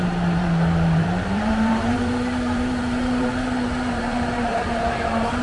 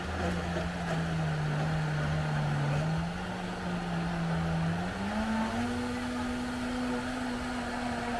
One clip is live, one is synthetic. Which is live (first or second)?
second